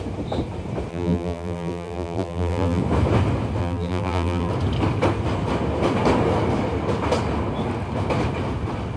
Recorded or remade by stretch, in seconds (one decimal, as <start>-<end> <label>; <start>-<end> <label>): 0.0-0.9 recorded; 0.9-2.8 remade; 2.8-3.6 recorded; 3.6-4.5 remade; 4.5-9.0 recorded